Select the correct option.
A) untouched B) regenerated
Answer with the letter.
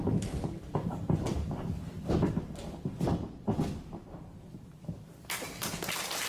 B